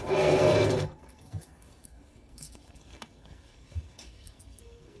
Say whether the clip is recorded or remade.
remade